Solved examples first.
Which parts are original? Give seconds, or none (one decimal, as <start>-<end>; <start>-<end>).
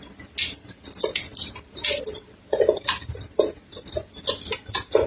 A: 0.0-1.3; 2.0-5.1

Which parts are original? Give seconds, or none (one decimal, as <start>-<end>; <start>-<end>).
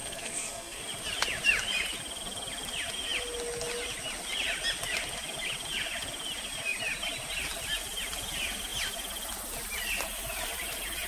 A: 0.8-11.1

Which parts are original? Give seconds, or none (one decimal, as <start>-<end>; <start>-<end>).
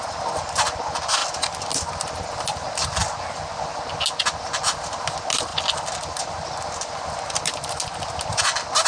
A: 0.0-8.9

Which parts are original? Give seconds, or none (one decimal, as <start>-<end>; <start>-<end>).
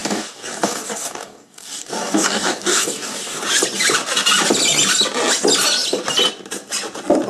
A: 3.4-7.3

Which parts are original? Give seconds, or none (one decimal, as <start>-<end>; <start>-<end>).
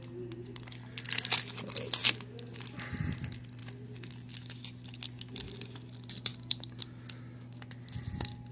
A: 0.0-8.5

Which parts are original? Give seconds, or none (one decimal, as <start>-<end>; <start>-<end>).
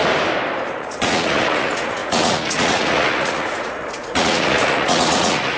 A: 0.0-0.8